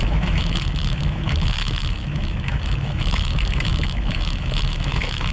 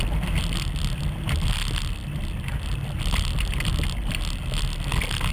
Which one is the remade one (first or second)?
first